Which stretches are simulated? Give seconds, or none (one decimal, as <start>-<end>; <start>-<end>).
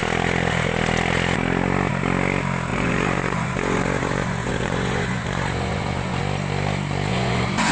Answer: 2.7-6.2; 7.1-7.7